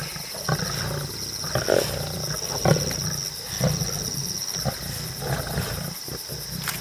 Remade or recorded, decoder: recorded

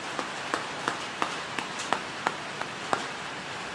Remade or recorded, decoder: recorded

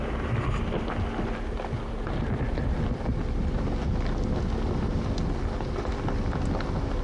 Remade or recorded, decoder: recorded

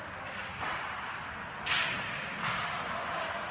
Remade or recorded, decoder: recorded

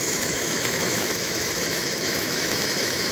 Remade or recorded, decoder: remade, autoencoder, DAC-VAE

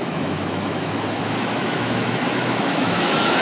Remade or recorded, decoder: remade, autoencoder, DAC-VAE